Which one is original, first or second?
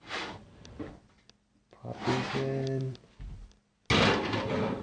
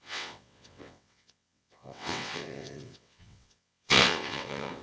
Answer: first